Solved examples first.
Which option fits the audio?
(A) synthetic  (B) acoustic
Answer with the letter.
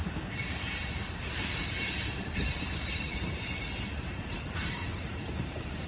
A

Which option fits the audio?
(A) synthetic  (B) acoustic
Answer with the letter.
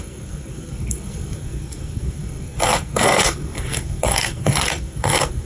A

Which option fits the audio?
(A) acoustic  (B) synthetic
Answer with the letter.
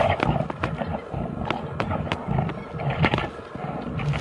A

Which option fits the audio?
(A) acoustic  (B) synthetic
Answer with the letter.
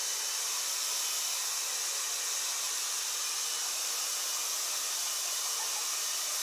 A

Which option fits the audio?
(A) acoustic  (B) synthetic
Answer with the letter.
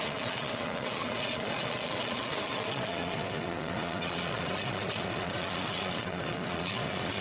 B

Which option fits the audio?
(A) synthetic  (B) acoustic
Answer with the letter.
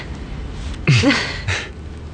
B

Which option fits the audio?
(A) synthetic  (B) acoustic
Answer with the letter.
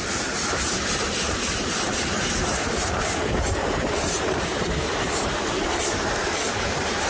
A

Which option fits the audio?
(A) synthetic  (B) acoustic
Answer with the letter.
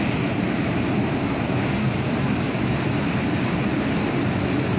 B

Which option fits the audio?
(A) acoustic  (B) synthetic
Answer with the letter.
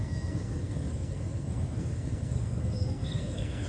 B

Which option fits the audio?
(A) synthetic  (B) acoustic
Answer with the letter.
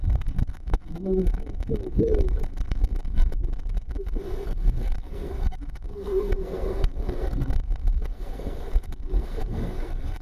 A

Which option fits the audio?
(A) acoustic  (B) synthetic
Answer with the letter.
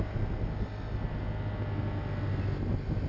A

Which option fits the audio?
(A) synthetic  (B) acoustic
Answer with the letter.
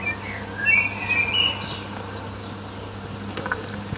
B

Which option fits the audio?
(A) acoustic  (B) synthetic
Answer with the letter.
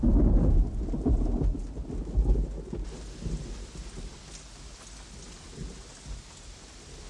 A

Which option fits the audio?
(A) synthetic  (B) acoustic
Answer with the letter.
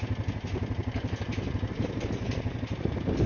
B